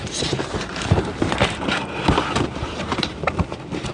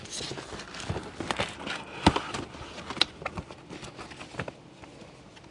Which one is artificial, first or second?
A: first